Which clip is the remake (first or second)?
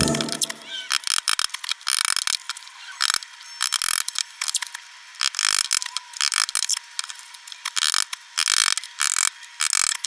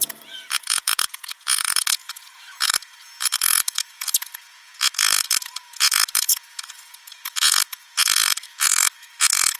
second